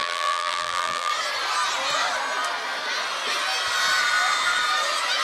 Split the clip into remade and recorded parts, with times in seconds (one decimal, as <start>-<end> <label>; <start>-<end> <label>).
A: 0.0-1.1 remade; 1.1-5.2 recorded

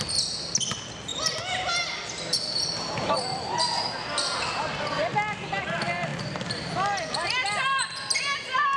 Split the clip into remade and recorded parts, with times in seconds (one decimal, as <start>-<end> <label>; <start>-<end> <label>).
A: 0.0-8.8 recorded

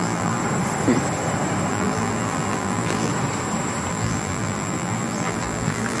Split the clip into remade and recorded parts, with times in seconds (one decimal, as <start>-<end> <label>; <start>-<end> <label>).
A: 0.0-0.4 remade; 0.4-1.7 recorded; 1.7-3.1 remade; 3.1-3.9 recorded; 3.9-6.0 remade

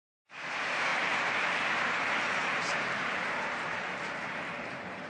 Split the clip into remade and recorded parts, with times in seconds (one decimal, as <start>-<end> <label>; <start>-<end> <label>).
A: 0.0-5.1 remade

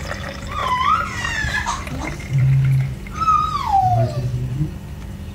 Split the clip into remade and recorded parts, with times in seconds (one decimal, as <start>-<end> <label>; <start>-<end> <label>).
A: 0.0-5.3 remade